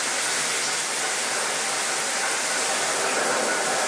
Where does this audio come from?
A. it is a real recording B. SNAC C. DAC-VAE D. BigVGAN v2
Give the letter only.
A